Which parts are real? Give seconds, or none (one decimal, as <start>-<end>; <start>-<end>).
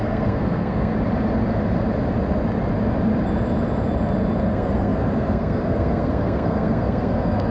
0.9-4.4